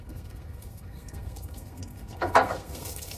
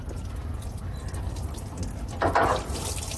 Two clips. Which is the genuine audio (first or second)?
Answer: second